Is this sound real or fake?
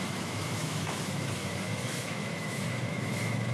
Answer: fake